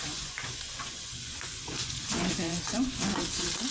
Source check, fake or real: fake